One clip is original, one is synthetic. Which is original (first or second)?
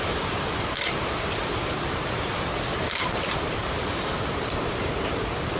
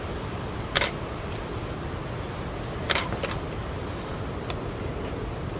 second